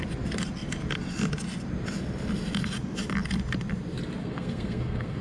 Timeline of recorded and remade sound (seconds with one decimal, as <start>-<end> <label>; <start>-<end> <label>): 0.0-4.2 recorded; 4.2-5.2 remade